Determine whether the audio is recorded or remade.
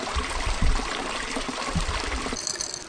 recorded